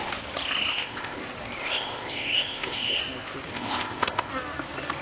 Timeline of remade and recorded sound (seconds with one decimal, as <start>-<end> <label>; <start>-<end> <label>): 0.0-0.7 recorded; 0.7-1.2 remade; 1.2-1.6 recorded; 1.6-3.0 remade; 3.0-3.5 recorded; 3.5-4.3 remade; 4.3-5.0 recorded